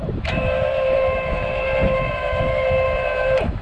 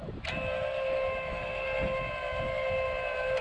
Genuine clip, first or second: second